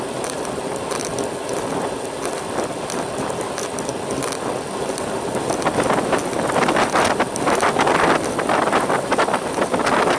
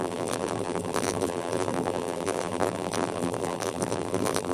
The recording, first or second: first